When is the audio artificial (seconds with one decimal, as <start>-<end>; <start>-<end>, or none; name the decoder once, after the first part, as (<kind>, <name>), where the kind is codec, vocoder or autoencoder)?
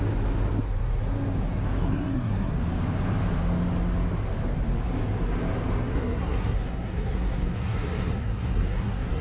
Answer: 1.8-2.5 (codec, SNAC); 5.8-9.2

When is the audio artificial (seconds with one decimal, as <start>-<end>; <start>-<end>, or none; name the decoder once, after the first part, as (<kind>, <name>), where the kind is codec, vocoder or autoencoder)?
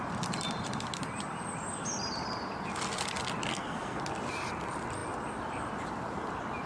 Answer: 3.5-4.0 (codec, SNAC)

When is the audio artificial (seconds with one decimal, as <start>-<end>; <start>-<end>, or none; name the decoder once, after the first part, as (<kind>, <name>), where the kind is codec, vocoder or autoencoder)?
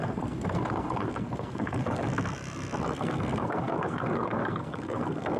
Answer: 0.0-2.1 (codec, SNAC); 2.8-5.4